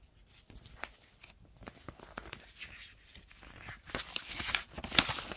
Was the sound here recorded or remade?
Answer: recorded